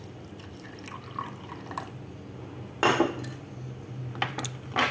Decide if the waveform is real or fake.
real